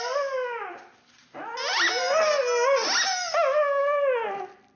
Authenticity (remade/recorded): recorded